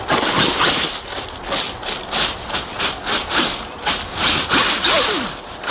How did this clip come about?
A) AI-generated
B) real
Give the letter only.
B